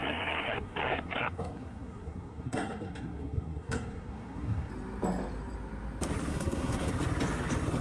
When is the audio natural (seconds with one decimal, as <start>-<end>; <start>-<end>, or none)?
4.7-6.3; 6.9-7.8